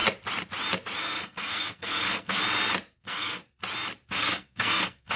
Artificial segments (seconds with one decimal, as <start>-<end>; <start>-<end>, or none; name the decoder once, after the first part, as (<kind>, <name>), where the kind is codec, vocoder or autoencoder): 1.0-2.4 (codec, SNAC); 3.0-3.4; 4.1-5.2